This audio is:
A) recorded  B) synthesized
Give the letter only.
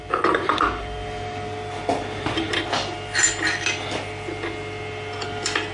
B